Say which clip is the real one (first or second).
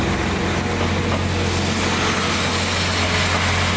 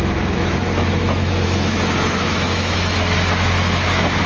first